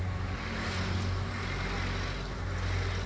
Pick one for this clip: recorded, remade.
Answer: recorded